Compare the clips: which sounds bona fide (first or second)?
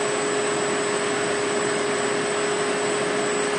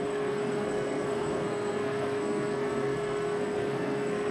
first